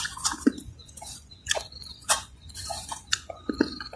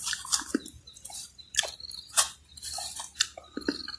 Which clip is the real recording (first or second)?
second